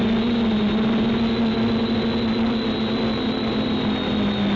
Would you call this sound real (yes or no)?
yes